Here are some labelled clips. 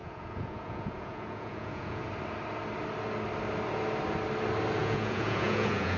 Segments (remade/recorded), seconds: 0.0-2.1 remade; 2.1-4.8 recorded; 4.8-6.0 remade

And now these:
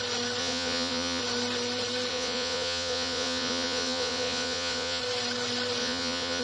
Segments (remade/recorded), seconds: 0.0-0.4 recorded; 0.4-1.2 remade; 1.2-2.1 recorded; 2.1-5.0 remade; 5.0-5.8 recorded; 5.8-6.4 remade

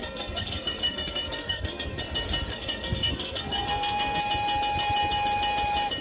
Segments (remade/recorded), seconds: 0.0-2.0 remade; 2.0-2.5 recorded; 2.5-4.2 remade; 4.2-6.0 recorded

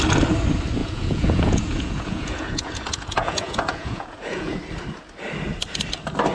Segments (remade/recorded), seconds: 0.0-0.8 recorded; 0.8-4.6 remade; 4.6-6.3 recorded

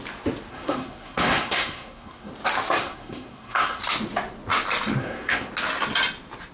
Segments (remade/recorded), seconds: 0.0-0.5 recorded; 0.5-2.3 remade; 2.3-2.8 recorded; 2.8-3.8 remade; 3.8-5.0 recorded; 5.0-5.5 remade; 5.5-6.5 recorded